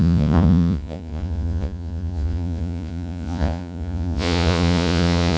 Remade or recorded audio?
remade